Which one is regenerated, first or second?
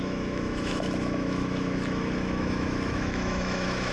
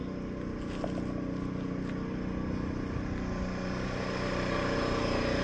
first